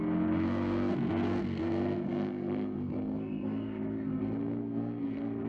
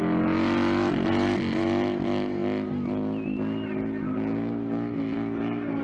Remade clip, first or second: first